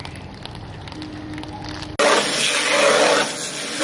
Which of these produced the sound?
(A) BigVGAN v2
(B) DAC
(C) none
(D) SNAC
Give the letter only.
C